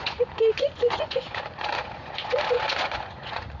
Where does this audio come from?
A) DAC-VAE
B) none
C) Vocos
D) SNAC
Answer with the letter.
C